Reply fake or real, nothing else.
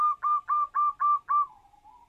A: real